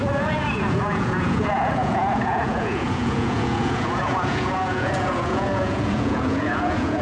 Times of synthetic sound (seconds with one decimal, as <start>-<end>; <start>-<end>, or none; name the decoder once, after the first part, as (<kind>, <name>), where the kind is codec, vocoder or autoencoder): 0.0-7.0 (vocoder, Vocos)